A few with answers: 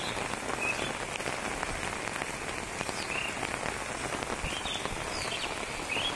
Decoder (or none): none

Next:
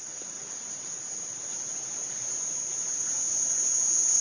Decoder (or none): none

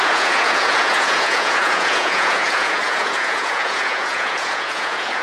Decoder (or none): vocoder, Vocos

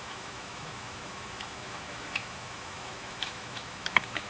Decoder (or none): autoencoder, DAC-VAE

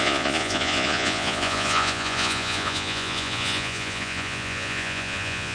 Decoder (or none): vocoder, Vocos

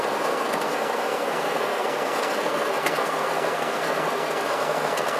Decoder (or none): codec, SNAC